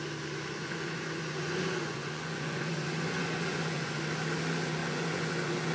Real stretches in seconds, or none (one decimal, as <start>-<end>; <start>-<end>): 0.0-0.6; 4.0-4.8